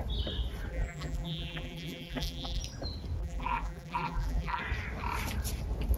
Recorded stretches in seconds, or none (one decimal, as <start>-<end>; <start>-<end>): 0.0-0.7; 2.6-3.2; 4.6-6.0